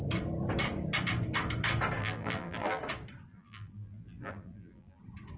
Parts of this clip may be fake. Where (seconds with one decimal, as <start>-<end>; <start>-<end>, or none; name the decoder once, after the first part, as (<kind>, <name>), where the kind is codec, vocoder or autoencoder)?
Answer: 2.0-2.8 (vocoder, BigVGAN v2); 3.3-5.0